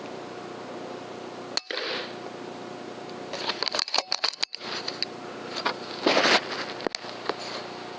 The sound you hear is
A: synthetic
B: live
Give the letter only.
B